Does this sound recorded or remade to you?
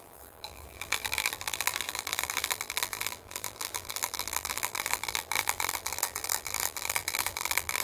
remade